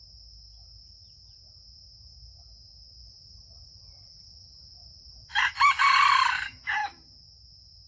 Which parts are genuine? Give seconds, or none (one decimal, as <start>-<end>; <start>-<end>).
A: 0.0-3.0; 5.4-7.9